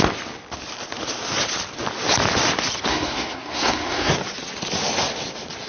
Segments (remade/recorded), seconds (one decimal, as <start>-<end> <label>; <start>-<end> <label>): 0.0-2.9 recorded; 2.9-4.1 remade; 4.1-5.7 recorded